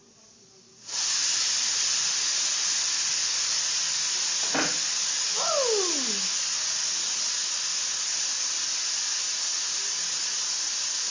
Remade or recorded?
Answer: recorded